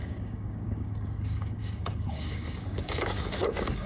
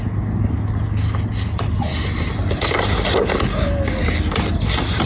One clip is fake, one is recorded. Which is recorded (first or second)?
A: second